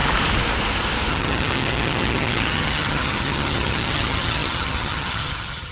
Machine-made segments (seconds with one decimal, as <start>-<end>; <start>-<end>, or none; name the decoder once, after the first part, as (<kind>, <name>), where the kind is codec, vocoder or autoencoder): 1.1-5.7 (vocoder, HiFi-GAN)